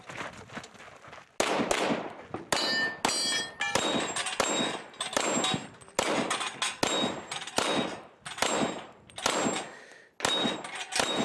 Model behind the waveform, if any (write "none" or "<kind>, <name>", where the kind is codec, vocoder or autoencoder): none